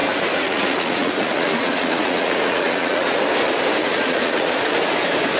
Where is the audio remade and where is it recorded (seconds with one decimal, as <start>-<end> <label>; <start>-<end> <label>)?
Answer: 0.0-3.2 remade; 3.2-3.8 recorded; 3.8-4.5 remade; 4.5-5.4 recorded